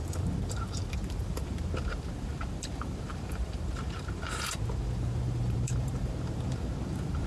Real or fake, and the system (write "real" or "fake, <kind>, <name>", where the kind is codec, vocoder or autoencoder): fake, vocoder, BigVGAN v2